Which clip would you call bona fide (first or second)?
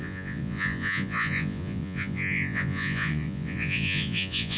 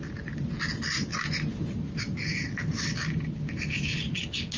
second